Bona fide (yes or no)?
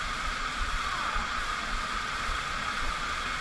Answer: no